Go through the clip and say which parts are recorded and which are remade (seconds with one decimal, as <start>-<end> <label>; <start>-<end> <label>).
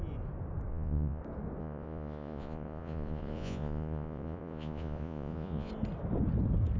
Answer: 0.0-0.7 recorded; 0.7-1.2 remade; 1.2-1.6 recorded; 1.6-5.7 remade; 5.7-6.8 recorded